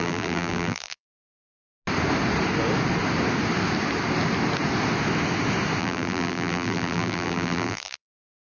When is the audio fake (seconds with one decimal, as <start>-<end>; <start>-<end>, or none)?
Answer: 0.0-1.4; 5.8-8.5